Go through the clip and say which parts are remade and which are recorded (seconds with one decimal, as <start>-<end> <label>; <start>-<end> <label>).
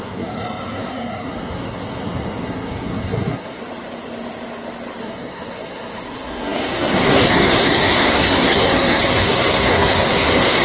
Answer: 0.0-3.6 remade; 3.6-5.0 recorded; 5.0-10.6 remade